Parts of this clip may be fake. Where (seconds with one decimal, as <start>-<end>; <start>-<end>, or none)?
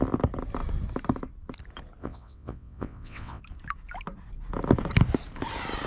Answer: 2.0-3.4